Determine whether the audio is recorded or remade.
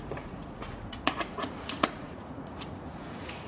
remade